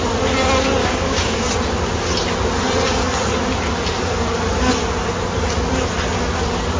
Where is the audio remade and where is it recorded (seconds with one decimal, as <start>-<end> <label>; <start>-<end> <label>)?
0.0-0.8 recorded; 0.8-1.5 remade; 1.5-6.8 recorded